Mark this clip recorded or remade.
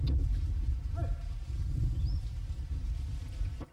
recorded